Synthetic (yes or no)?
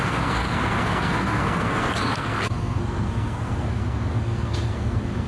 yes